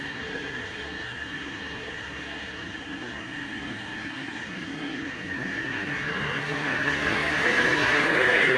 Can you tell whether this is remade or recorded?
remade